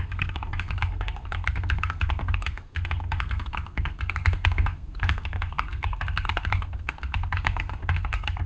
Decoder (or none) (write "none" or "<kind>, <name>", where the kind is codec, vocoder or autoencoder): codec, SNAC